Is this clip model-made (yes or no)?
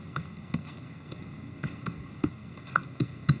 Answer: yes